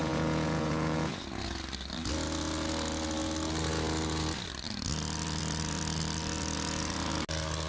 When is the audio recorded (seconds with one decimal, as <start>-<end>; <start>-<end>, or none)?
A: 1.1-7.7